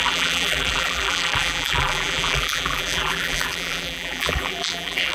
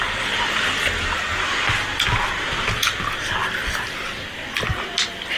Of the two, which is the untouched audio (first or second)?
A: second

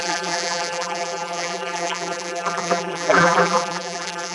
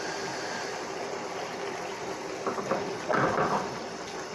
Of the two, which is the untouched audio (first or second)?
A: second